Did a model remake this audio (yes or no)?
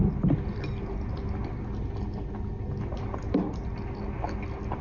no